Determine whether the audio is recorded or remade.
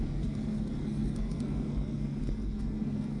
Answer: remade